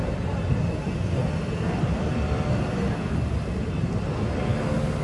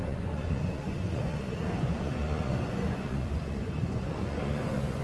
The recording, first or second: first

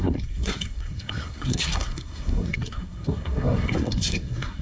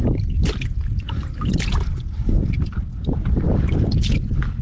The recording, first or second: second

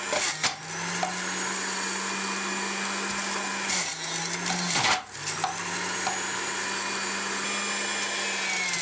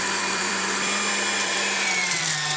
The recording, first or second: first